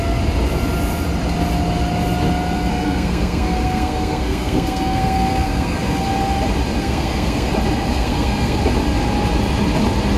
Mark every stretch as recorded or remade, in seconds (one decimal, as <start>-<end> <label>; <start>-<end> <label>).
0.0-2.7 recorded; 2.7-6.0 remade; 6.0-6.8 recorded; 6.8-7.5 remade; 7.5-7.9 recorded; 7.9-8.6 remade; 8.6-10.2 recorded